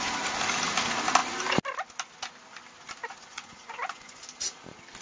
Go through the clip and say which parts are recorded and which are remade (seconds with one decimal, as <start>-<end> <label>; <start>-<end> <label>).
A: 0.0-3.3 recorded; 3.3-4.2 remade; 4.2-5.0 recorded